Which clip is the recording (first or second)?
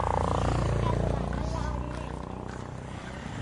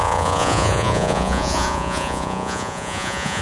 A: first